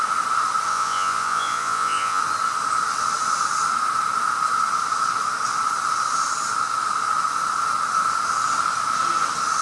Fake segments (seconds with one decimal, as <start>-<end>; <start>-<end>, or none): 0.7-2.2